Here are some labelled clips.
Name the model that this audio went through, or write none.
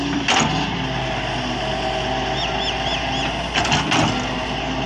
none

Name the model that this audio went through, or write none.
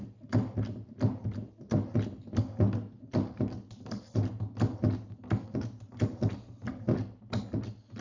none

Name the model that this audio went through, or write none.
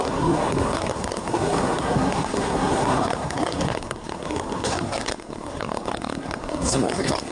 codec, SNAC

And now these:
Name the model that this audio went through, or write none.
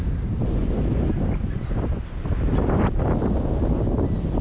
none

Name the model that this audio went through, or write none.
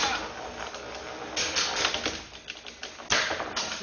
none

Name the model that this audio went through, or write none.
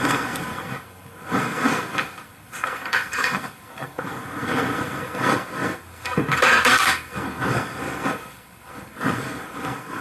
codec, SNAC